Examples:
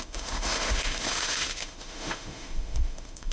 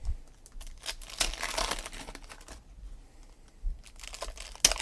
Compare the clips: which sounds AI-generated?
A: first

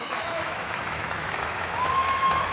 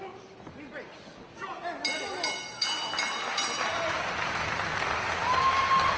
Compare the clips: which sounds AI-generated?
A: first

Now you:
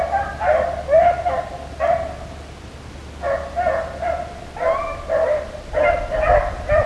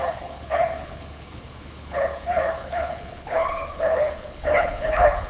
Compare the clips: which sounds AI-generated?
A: second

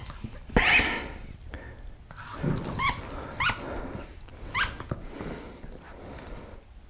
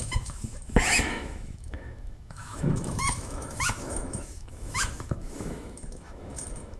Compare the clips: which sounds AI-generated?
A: second